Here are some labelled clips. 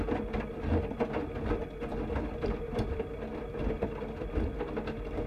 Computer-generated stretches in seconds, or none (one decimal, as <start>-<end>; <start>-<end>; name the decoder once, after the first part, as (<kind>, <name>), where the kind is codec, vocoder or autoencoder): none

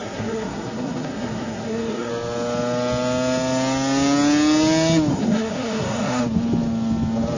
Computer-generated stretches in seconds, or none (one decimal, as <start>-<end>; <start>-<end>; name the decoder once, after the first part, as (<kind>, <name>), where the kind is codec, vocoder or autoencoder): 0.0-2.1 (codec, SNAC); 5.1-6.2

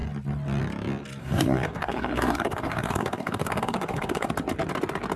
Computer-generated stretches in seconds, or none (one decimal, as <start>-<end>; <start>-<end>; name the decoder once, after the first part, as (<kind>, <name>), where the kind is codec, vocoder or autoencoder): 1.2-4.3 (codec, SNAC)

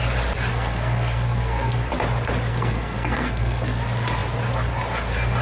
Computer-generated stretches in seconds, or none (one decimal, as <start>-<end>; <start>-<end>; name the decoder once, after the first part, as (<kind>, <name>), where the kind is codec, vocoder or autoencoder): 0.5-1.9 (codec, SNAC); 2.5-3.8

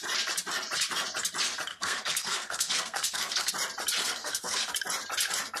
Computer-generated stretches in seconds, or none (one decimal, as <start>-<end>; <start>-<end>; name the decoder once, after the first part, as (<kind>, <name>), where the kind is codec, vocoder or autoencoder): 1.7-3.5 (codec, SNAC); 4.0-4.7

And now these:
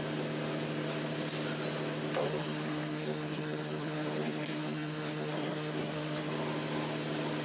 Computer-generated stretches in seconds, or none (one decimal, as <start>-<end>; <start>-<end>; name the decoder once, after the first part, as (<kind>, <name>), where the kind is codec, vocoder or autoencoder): 2.2-6.3 (codec, SNAC)